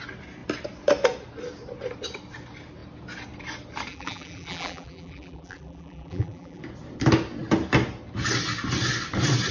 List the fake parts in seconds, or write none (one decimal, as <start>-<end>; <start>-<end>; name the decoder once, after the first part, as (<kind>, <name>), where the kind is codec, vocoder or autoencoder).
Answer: 3.9-6.6 (vocoder, BigVGAN v2)